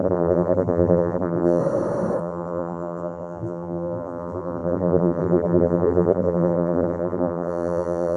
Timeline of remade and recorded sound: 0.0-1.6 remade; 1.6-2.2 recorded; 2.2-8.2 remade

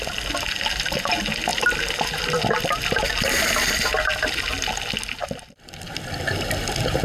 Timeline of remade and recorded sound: 0.0-1.5 recorded; 1.5-4.4 remade; 4.4-5.2 recorded; 5.2-5.8 remade; 5.8-7.0 recorded

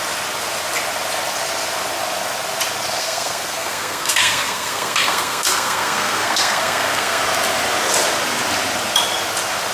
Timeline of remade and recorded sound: 0.0-3.0 recorded; 3.0-7.2 remade; 7.2-9.7 recorded

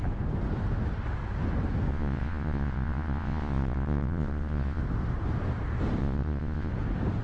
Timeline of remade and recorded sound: 0.0-1.9 recorded; 1.9-4.8 remade; 4.8-6.0 recorded; 6.0-6.7 remade; 6.7-7.2 recorded

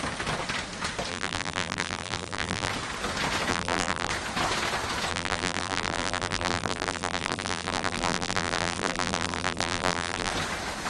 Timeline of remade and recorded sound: 0.0-1.1 recorded; 1.1-2.7 remade; 2.7-3.5 recorded; 3.5-4.1 remade; 4.1-5.1 recorded; 5.1-10.3 remade; 10.3-10.9 recorded

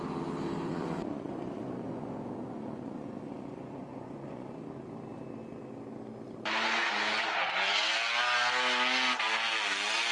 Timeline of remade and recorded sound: 0.0-0.7 recorded; 0.7-4.5 remade; 4.5-10.1 recorded

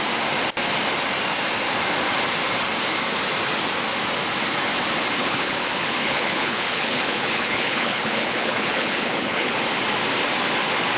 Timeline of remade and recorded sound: 0.0-5.2 recorded; 5.2-9.5 remade; 9.5-11.0 recorded